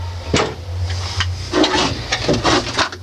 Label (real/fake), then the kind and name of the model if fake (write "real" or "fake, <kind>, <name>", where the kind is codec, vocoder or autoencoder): real